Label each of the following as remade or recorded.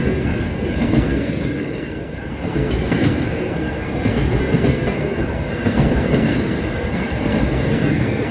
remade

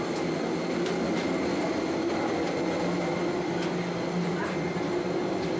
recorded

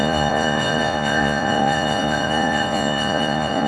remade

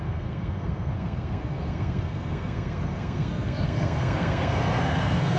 remade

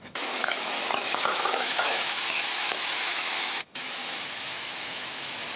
remade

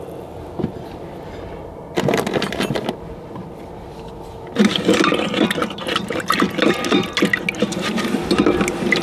recorded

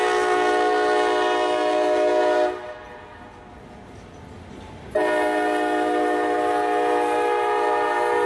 recorded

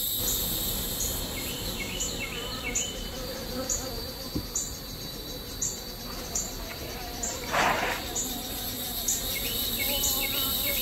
remade